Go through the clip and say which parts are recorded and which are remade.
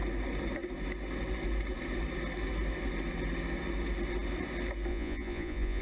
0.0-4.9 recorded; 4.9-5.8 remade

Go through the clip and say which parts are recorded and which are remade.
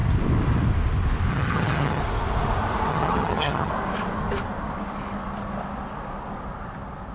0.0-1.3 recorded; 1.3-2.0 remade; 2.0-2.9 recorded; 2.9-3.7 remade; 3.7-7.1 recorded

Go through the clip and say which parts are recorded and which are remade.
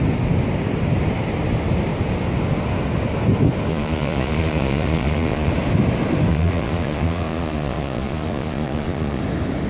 0.0-3.7 recorded; 3.7-5.5 remade; 5.5-6.3 recorded; 6.3-9.2 remade; 9.2-9.7 recorded